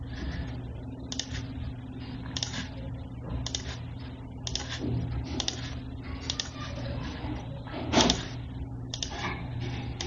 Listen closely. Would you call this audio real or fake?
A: real